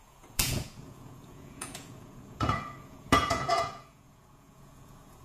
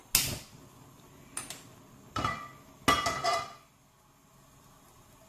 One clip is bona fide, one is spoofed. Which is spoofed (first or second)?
first